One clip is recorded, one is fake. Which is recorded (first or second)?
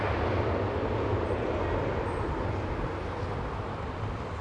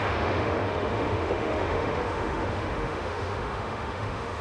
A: first